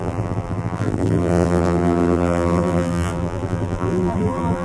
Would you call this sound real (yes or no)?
no